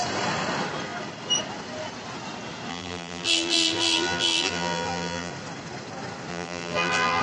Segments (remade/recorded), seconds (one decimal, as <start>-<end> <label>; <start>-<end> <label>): 0.0-2.7 recorded; 2.7-5.3 remade; 5.3-6.3 recorded; 6.3-7.2 remade